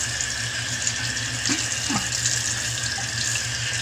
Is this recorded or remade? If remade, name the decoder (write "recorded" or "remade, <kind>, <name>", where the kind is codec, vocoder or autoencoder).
recorded